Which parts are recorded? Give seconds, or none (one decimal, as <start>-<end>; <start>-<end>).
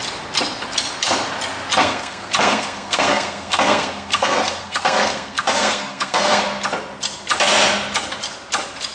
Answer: 0.0-1.8; 6.4-8.9